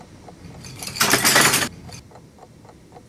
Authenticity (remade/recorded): recorded